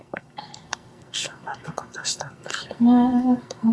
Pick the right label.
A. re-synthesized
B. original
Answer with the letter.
A